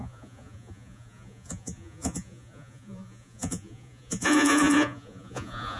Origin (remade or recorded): remade